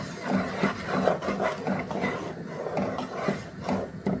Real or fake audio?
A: real